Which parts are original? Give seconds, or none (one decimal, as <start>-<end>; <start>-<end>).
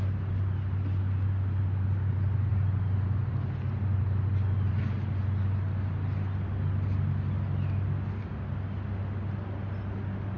0.0-10.4